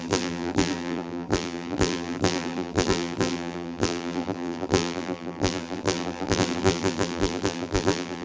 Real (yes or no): no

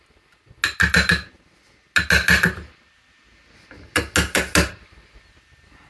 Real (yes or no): yes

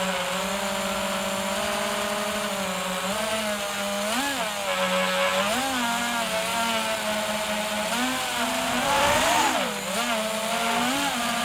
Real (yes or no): yes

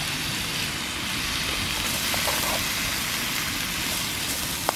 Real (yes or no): yes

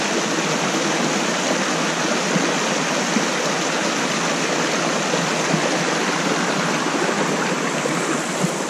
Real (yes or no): yes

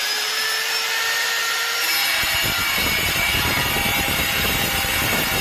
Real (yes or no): no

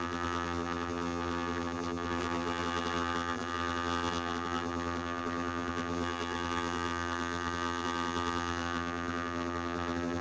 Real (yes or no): no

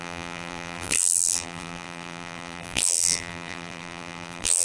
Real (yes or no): no